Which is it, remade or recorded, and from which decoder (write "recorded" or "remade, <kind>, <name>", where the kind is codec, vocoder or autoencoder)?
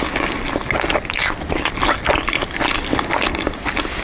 recorded